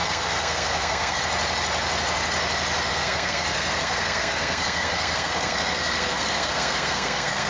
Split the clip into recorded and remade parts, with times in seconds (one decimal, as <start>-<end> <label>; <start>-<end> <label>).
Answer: 0.0-1.2 remade; 1.2-2.9 recorded; 2.9-7.5 remade